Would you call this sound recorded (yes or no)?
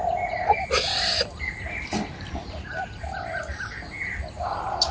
yes